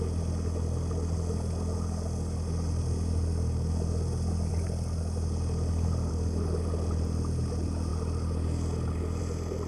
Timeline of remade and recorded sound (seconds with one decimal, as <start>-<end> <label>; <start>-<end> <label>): 0.0-9.7 recorded